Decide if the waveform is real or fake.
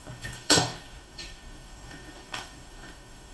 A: fake